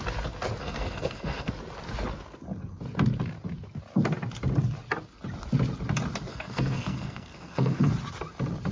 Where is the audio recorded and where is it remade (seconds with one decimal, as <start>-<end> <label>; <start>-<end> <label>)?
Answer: 0.0-0.6 recorded; 0.6-1.5 remade; 1.5-6.3 recorded; 6.3-7.9 remade; 7.9-8.7 recorded